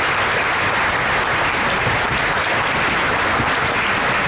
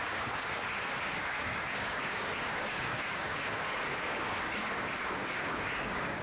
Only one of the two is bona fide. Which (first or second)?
first